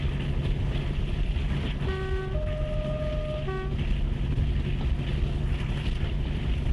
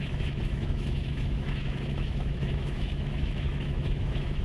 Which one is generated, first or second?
second